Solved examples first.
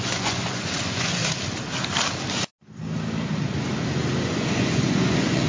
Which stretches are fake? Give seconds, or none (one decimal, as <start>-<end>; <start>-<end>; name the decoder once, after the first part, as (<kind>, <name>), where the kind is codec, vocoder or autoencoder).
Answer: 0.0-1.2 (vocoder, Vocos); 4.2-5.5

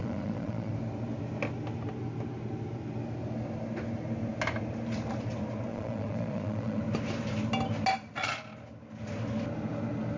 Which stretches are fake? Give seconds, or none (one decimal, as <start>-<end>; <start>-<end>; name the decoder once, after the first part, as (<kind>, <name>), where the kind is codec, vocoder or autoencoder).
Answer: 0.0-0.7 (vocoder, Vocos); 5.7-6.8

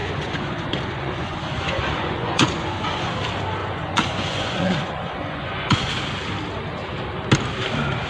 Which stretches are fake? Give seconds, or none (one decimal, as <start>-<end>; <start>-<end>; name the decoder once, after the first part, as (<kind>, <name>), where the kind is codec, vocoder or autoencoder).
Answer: 0.0-3.1 (vocoder, Vocos); 3.6-5.9

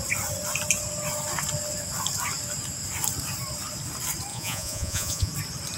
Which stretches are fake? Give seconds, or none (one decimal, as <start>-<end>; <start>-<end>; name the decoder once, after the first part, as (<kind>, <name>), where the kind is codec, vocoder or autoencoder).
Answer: 4.3-5.3 (vocoder, Vocos)

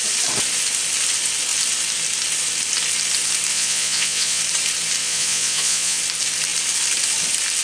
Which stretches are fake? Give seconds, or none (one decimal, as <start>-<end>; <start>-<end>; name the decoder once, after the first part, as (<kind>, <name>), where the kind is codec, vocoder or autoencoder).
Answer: 3.5-4.4 (vocoder, Vocos); 5.0-6.0